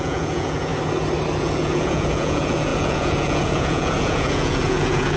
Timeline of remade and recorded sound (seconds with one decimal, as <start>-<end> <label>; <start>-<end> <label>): 0.0-0.7 remade; 0.7-1.4 recorded; 1.4-5.2 remade